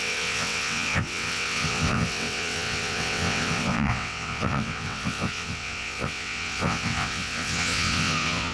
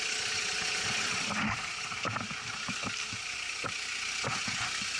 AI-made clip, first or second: first